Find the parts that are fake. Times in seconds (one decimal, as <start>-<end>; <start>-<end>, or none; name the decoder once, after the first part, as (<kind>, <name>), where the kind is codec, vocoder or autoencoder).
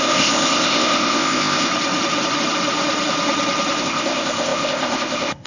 0.0-1.7 (codec, ZipCodec); 3.8-5.5